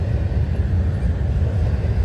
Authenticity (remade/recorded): recorded